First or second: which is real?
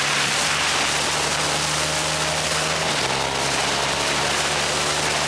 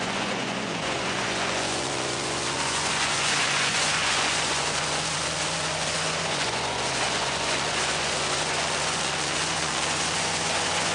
first